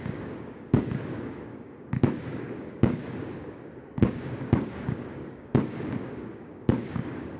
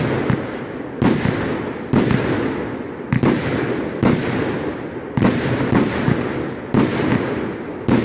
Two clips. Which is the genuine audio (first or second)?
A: second